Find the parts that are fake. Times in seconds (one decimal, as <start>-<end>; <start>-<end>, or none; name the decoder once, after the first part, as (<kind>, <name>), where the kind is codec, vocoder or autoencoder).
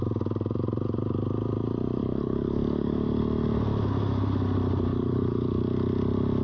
2.0-3.2 (codec, DAC); 4.9-5.6